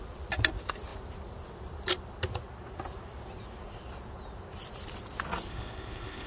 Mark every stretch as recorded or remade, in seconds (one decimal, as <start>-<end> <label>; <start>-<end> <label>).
0.0-5.5 recorded; 5.5-6.3 remade